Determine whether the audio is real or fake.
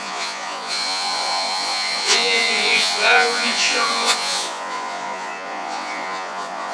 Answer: fake